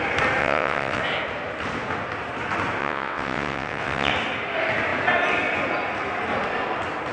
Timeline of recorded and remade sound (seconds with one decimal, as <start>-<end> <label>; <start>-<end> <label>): 0.0-0.4 recorded; 0.4-1.0 remade; 1.0-2.8 recorded; 2.8-4.1 remade; 4.1-7.1 recorded